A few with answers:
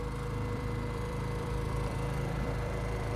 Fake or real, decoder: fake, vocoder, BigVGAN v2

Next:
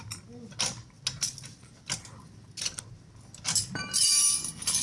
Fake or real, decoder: real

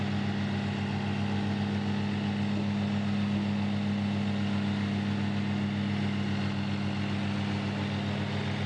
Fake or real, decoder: real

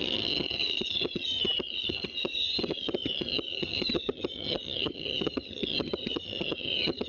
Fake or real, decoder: fake, vocoder, HiFi-GAN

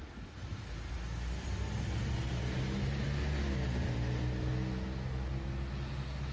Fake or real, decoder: real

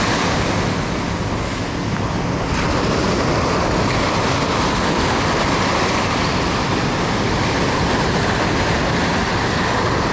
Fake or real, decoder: real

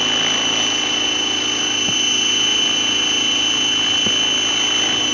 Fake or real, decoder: real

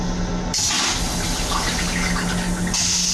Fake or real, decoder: real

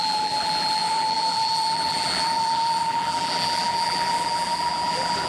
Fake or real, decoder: fake, vocoder, BigVGAN v2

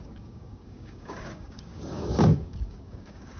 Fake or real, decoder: fake, codec, DAC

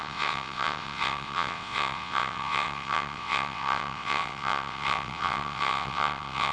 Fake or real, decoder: fake, vocoder, WaveNeXt